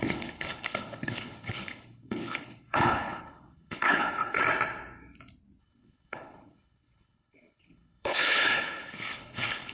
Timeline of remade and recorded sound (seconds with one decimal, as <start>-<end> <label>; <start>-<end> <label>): 0.0-4.4 remade; 4.4-5.6 recorded; 5.6-9.7 remade